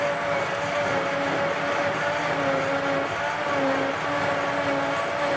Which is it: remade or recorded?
recorded